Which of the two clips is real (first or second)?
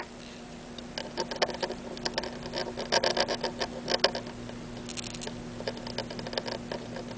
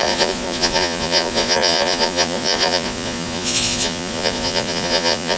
first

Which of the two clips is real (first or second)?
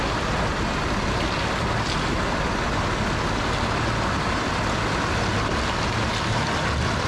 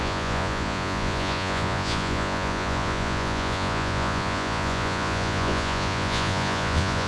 first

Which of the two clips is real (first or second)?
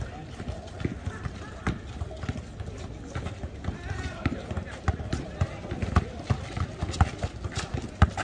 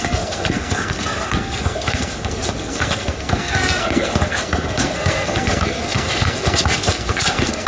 first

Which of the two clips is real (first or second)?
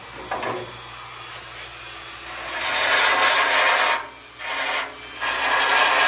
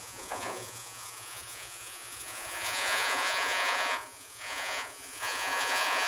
first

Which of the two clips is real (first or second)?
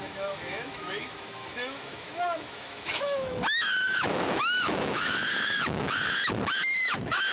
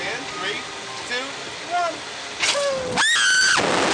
second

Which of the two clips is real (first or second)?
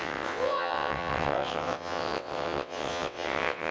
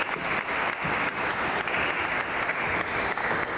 second